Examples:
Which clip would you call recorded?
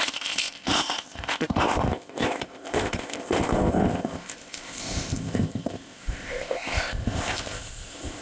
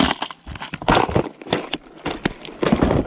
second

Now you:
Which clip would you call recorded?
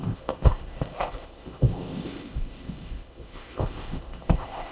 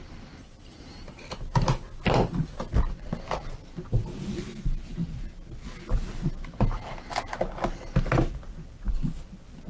second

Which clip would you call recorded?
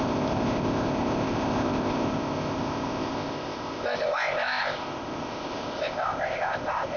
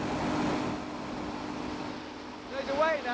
second